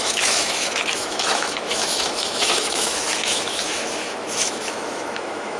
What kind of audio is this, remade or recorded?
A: remade